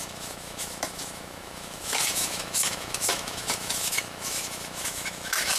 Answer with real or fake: fake